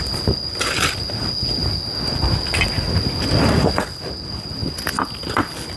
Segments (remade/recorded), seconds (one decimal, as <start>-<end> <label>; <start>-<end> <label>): 0.0-5.8 recorded